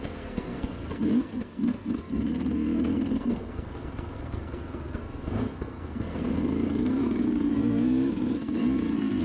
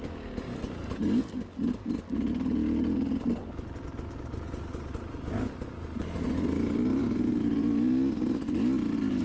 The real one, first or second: second